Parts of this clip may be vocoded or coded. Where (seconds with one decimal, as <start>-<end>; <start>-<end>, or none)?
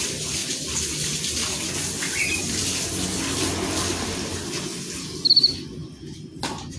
0.4-4.5